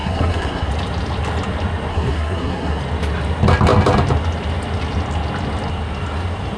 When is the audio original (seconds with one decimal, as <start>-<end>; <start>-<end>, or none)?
0.7-1.9; 2.8-6.6